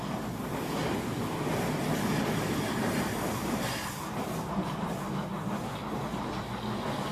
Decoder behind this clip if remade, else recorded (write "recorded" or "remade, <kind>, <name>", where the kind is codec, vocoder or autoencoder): recorded